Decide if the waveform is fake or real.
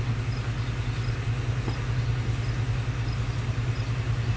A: real